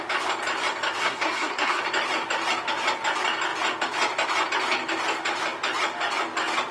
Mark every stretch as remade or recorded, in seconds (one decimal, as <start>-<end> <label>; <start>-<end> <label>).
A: 0.0-1.0 recorded; 1.0-1.8 remade; 1.8-6.7 recorded